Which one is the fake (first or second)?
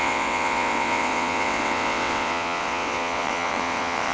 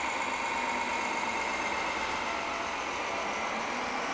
first